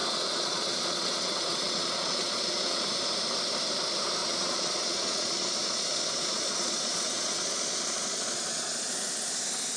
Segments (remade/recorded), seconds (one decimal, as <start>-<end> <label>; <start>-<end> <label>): 0.0-2.8 remade; 2.8-4.2 recorded; 4.2-8.9 remade; 8.9-9.8 recorded